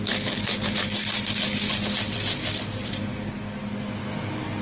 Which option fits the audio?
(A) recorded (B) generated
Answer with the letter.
A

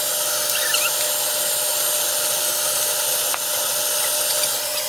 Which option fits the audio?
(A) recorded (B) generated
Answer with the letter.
A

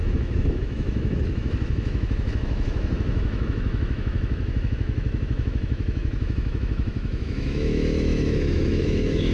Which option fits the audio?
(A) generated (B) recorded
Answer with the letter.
A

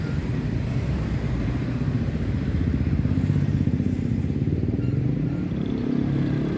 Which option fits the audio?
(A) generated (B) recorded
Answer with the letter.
A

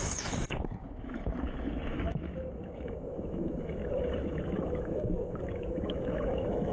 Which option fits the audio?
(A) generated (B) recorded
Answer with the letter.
A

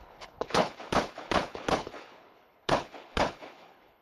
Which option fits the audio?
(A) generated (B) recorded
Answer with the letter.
A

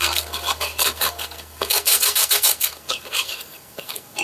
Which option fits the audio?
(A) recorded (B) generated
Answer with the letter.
B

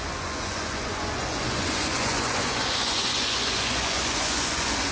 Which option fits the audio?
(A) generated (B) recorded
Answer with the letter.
A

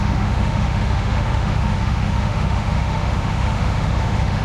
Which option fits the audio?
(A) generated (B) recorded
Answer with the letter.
A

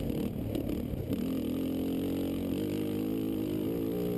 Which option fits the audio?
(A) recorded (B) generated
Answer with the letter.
A